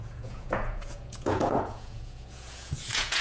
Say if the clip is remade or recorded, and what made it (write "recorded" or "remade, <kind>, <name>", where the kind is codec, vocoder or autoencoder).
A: remade, vocoder, Vocos